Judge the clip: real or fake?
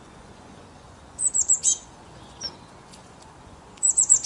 fake